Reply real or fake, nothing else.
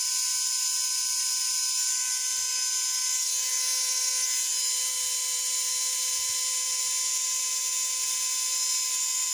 real